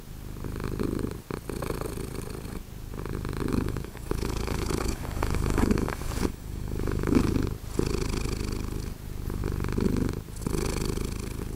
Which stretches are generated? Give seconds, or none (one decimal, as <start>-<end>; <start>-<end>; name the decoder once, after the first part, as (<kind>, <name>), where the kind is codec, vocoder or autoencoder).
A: 3.5-7.3 (codec, DAC)